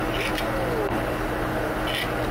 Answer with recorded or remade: recorded